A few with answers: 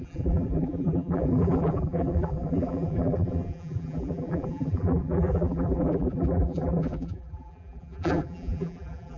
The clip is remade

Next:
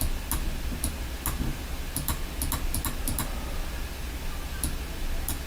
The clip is recorded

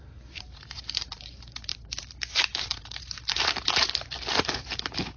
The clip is remade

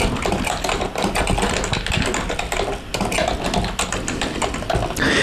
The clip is recorded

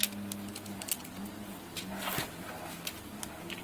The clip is recorded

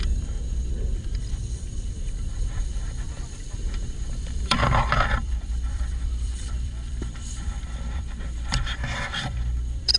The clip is remade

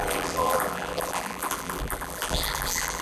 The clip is remade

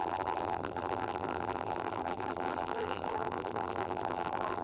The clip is remade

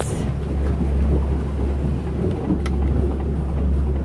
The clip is recorded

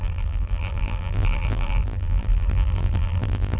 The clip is remade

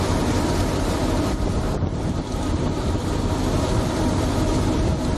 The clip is remade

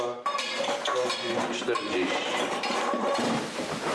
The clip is remade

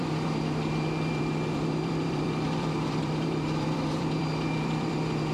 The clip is remade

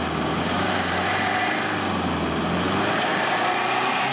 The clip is recorded